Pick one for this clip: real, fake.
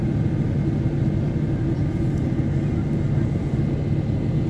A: real